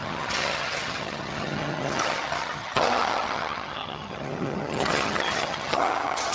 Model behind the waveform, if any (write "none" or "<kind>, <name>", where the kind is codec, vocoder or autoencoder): vocoder, HiFi-GAN